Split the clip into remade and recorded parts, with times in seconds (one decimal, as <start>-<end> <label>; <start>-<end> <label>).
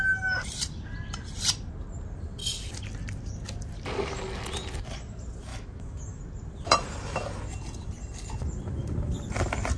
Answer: 0.0-5.5 recorded; 5.5-6.2 remade; 6.2-9.8 recorded